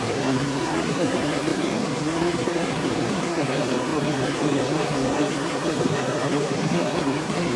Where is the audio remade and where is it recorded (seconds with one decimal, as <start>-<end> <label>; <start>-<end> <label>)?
0.0-7.6 remade